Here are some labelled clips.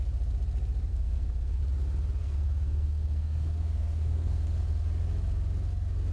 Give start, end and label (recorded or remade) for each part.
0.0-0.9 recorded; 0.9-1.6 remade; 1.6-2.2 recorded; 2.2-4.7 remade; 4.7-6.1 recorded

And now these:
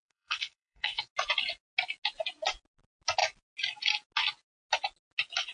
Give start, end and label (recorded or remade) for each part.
0.0-1.1 remade; 1.1-5.5 recorded

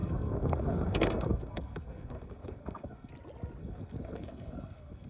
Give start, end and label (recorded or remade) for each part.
0.0-3.1 remade; 3.1-3.6 recorded; 3.6-5.1 remade

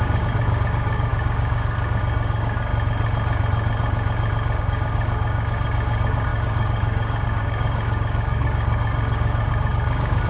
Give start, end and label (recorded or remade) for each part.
0.0-2.7 remade; 2.7-4.6 recorded; 4.6-10.3 remade

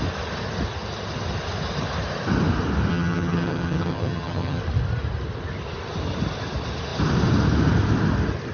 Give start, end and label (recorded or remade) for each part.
0.0-2.9 recorded; 2.9-4.6 remade; 4.6-8.5 recorded